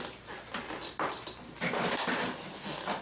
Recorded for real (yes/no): yes